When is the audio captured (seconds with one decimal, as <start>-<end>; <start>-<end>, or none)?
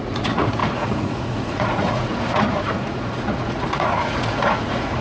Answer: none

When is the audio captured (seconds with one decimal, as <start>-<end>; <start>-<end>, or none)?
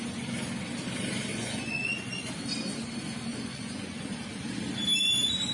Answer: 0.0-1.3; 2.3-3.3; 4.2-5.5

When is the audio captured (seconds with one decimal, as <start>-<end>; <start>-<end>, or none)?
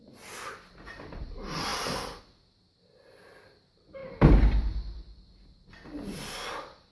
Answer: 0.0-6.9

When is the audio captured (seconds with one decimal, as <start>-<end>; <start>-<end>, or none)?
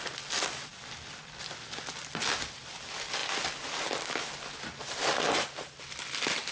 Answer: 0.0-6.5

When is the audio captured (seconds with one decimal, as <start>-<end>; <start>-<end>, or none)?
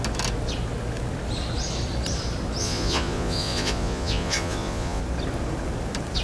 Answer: 0.0-2.6; 5.0-6.2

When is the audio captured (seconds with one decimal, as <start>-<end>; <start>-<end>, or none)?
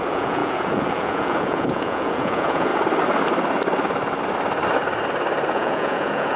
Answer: 2.7-5.5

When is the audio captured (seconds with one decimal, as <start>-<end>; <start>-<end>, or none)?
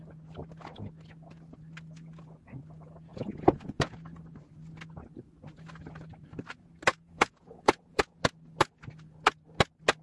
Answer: 0.0-3.1; 4.2-6.9; 8.2-10.0